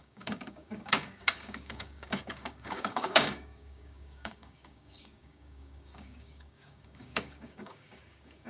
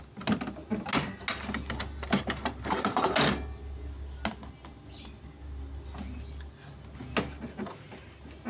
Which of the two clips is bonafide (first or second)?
second